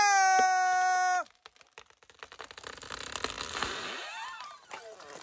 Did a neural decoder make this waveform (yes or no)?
no